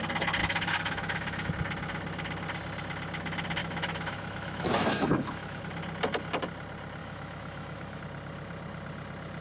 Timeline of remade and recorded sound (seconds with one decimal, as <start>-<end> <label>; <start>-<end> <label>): 0.0-0.4 recorded; 0.4-1.5 remade; 1.5-3.6 recorded; 3.6-5.6 remade; 5.6-7.0 recorded; 7.0-8.0 remade; 8.0-9.4 recorded